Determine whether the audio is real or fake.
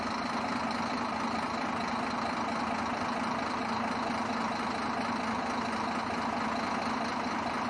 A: real